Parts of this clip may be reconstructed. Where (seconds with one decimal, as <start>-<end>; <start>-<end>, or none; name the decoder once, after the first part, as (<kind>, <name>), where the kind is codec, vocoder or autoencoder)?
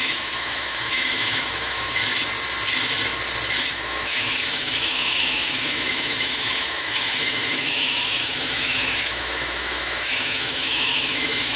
0.0-2.0 (autoencoder, DAC-VAE); 3.6-11.6